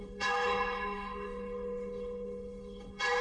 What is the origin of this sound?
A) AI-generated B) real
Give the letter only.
A